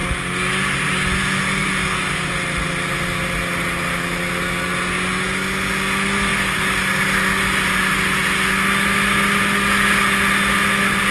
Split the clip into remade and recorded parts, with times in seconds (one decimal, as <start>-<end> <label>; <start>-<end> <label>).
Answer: 0.0-11.1 recorded